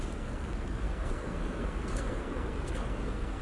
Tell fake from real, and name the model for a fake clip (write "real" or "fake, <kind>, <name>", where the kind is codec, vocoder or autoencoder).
fake, codec, SNAC